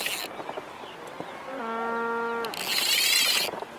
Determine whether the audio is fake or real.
real